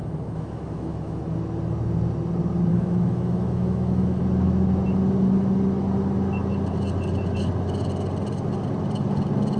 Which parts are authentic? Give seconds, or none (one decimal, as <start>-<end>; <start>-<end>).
1.2-2.7; 4.2-9.6